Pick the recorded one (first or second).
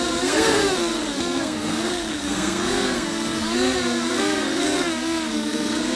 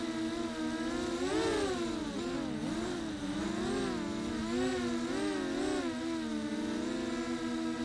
second